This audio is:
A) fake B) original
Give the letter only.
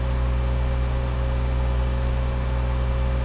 B